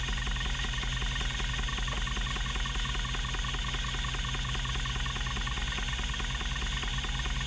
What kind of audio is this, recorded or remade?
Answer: recorded